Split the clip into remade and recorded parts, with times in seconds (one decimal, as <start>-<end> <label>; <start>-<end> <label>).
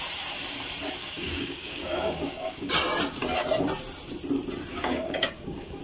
0.0-1.0 recorded; 1.0-2.7 remade; 2.7-4.7 recorded; 4.7-5.8 remade